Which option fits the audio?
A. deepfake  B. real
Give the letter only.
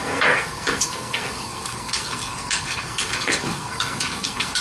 A